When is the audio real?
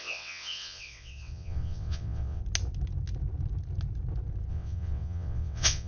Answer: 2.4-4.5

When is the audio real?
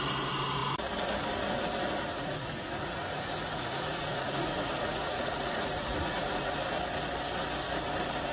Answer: 0.0-2.1; 6.5-8.3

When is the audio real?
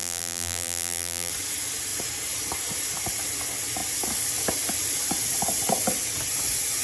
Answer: 1.3-6.8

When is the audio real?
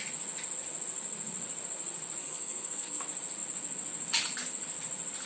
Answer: 0.0-2.2; 3.0-5.3